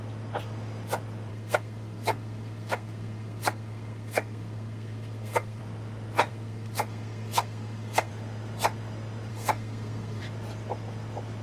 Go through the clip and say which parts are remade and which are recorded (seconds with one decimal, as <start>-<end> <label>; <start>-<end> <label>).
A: 0.0-1.3 recorded; 1.3-5.6 remade; 5.6-6.3 recorded; 6.3-8.1 remade; 8.1-9.3 recorded; 9.3-10.2 remade; 10.2-11.4 recorded